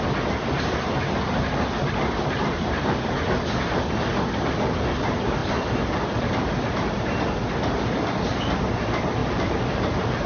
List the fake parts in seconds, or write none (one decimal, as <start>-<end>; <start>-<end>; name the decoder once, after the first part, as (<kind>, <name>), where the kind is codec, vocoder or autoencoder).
5.4-6.3 (vocoder, BigVGAN v2); 9.2-10.3